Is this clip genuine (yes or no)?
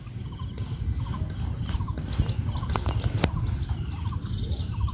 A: yes